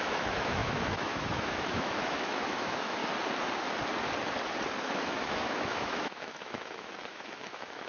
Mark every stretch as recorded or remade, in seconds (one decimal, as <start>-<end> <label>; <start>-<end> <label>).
0.0-3.0 remade; 3.0-4.8 recorded; 4.8-7.9 remade